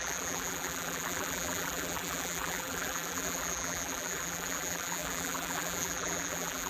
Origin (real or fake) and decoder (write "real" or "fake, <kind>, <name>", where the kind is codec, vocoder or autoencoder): fake, vocoder, BigVGAN v2